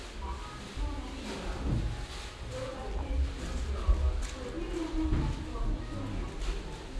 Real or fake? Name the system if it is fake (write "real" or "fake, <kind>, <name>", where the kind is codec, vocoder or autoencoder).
real